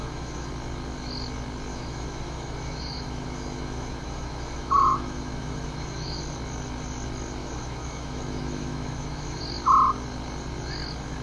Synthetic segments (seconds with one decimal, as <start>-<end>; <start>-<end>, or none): 0.0-0.5; 1.7-6.2; 7.4-9.4